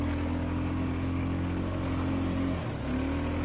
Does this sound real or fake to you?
real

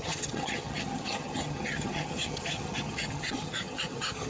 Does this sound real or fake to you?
fake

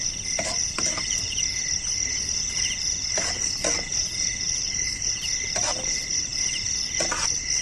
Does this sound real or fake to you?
real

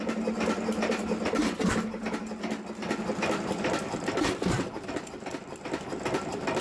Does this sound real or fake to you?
real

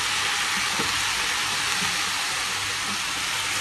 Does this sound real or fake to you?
real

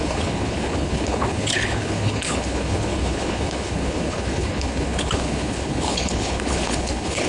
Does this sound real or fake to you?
fake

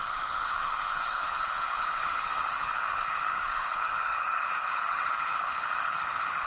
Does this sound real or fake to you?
fake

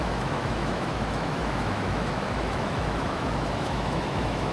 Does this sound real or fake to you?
fake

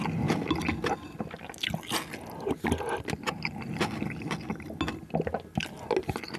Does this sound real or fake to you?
real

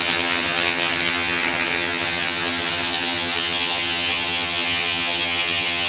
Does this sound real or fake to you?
fake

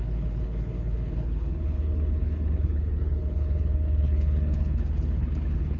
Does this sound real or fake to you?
fake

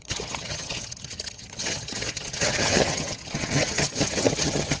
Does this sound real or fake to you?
fake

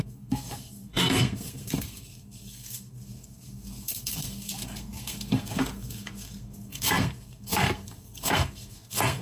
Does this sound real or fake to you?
fake